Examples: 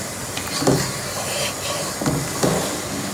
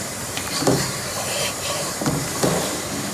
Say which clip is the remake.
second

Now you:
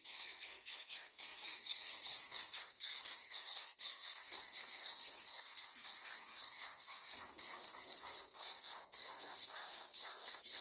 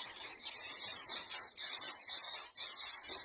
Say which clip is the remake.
first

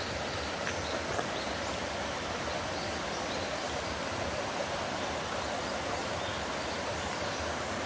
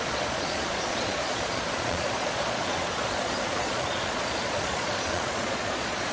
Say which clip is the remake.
second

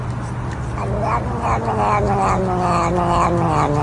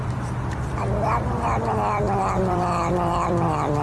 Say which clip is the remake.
second